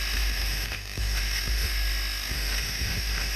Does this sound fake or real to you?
fake